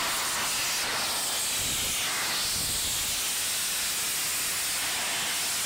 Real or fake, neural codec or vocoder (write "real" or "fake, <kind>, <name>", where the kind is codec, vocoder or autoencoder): real